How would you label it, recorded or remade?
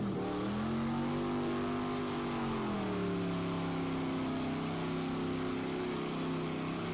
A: recorded